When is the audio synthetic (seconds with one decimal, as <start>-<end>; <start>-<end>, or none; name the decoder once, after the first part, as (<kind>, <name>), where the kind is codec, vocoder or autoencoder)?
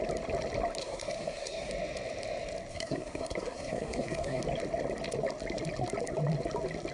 0.8-1.7 (codec, SNAC); 2.7-4.4